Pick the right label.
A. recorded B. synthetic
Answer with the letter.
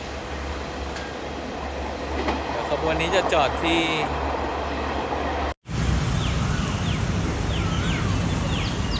A